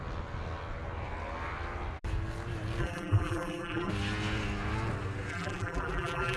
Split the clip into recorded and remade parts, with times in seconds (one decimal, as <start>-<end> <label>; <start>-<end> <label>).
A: 0.0-2.8 recorded; 2.8-3.9 remade; 3.9-5.3 recorded; 5.3-6.4 remade